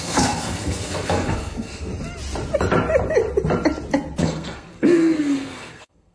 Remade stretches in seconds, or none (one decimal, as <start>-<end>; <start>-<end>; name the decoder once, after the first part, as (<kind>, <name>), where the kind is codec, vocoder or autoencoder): 0.0-1.9 (codec, SNAC); 4.2-6.1